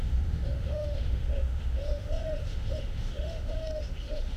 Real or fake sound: fake